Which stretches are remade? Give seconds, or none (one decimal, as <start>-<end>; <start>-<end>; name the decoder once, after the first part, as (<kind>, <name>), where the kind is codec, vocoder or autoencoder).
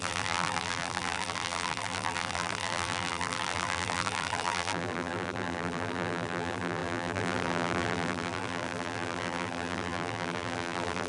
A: 0.0-11.1 (vocoder, BigVGAN v2)